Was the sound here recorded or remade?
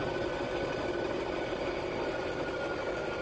recorded